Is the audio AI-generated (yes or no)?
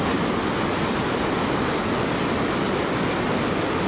no